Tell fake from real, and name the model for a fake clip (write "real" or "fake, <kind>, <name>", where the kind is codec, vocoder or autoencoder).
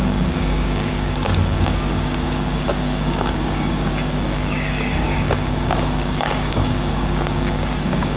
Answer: fake, codec, DAC